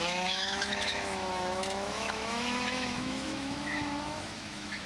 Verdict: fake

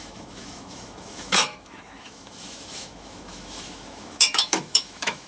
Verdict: fake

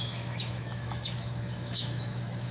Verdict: fake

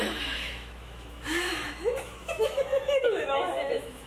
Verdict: fake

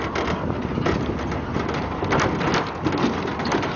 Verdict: real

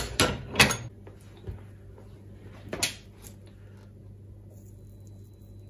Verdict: real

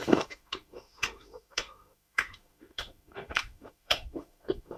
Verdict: fake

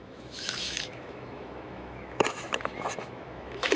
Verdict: fake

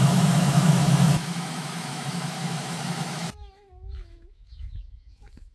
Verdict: fake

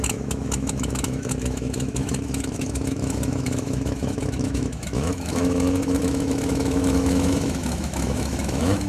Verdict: fake